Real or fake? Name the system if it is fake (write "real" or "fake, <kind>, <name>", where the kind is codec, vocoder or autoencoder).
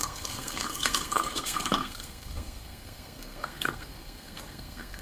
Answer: fake, codec, SNAC